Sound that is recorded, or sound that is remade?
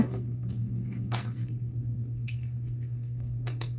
remade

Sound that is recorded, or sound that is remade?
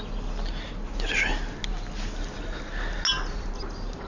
recorded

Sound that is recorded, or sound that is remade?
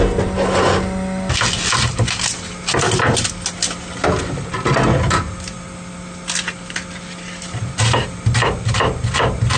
recorded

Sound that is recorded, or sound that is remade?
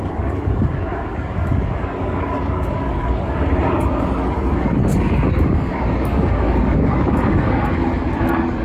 remade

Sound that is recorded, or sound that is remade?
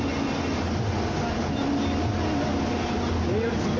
recorded